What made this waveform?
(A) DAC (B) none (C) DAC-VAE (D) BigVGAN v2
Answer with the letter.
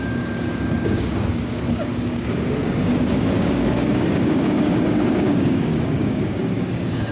A